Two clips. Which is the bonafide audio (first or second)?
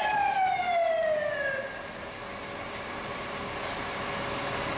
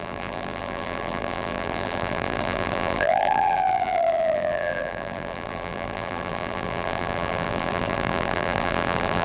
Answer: first